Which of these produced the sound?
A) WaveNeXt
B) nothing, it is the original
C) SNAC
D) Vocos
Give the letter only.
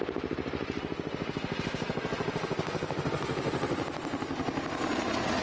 B